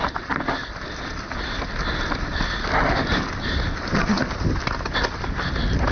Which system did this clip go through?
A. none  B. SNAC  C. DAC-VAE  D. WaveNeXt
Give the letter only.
A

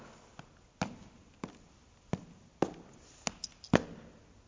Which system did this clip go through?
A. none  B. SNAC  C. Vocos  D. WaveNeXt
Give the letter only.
A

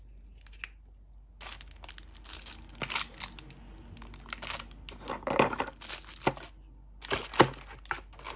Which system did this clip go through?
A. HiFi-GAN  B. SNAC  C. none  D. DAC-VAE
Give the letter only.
C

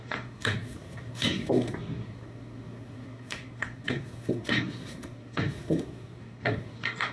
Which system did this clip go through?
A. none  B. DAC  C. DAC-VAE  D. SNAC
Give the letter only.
D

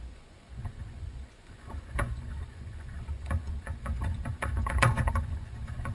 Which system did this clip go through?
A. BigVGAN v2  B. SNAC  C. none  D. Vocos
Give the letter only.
D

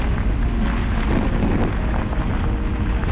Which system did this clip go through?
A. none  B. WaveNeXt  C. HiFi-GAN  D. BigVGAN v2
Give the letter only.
A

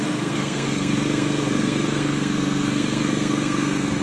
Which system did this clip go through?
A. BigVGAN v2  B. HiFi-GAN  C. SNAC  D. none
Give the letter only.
C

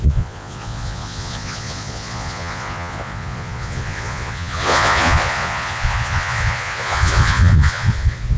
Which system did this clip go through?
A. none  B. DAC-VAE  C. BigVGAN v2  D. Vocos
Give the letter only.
D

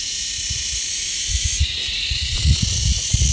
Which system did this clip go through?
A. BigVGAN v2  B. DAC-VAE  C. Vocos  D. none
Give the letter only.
C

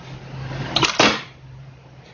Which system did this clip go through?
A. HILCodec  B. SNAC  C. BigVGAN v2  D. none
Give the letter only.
D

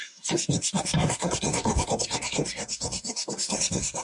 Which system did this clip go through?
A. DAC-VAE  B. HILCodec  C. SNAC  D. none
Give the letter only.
C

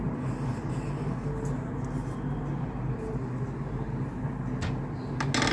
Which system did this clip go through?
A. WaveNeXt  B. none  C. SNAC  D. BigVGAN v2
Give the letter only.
B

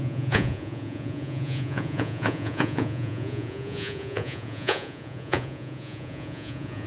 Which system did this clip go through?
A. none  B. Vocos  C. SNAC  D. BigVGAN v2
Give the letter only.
B